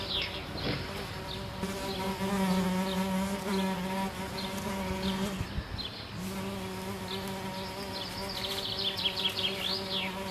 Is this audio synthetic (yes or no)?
no